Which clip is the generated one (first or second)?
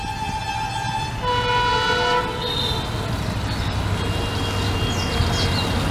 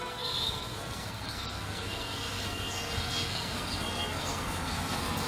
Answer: second